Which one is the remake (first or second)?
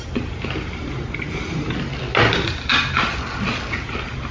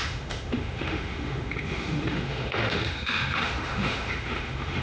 second